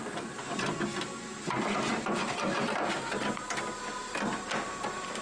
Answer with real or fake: real